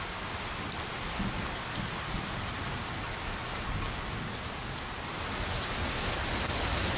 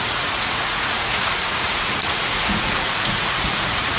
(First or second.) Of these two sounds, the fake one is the second